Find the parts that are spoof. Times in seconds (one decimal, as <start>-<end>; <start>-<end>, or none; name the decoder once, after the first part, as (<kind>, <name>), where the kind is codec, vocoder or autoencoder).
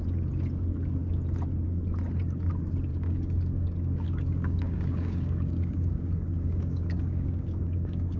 2.9-8.2 (codec, DAC)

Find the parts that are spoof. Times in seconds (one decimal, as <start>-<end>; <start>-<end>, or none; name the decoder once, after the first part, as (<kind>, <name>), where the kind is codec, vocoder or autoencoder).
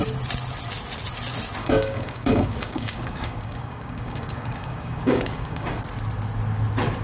1.6-5.8 (codec, DAC)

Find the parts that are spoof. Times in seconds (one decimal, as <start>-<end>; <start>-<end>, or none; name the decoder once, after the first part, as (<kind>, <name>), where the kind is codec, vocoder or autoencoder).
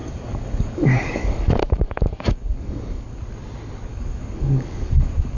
0.0-3.2 (codec, DAC); 3.9-5.4